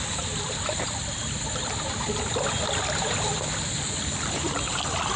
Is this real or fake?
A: real